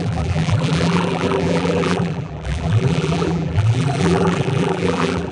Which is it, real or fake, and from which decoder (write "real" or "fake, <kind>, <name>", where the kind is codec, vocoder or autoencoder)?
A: fake, vocoder, BigVGAN v2